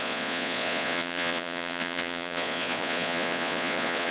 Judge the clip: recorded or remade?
remade